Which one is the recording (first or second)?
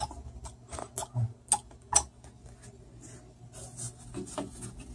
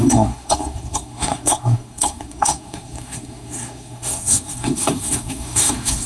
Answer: first